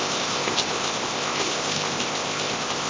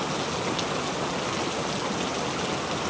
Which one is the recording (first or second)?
second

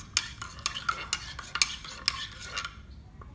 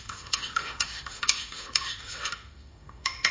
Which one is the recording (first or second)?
first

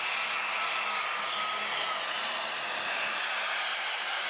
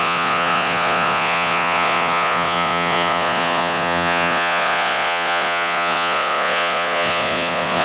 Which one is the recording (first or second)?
first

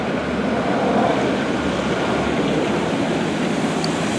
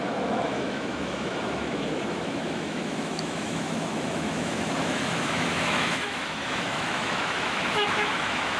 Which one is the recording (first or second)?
first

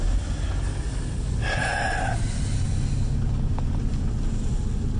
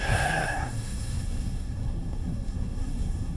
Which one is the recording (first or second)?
first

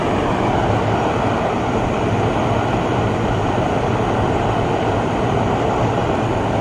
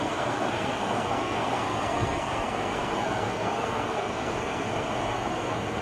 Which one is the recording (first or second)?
first